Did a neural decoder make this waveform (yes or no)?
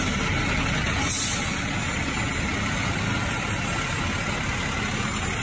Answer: no